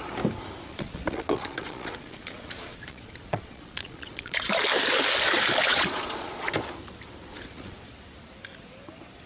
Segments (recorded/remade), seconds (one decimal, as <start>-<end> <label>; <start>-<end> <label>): 0.0-0.7 recorded; 0.7-4.5 remade; 4.5-5.7 recorded; 5.7-6.5 remade; 6.5-7.3 recorded; 7.3-7.9 remade; 7.9-9.3 recorded